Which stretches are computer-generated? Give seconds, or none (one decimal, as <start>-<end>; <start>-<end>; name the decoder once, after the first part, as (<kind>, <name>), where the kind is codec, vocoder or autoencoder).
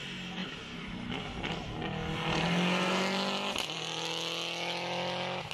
none